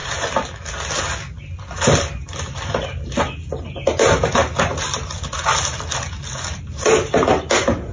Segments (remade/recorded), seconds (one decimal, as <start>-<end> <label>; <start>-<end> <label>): 0.0-7.9 recorded